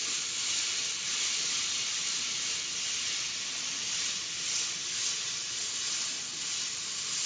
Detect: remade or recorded recorded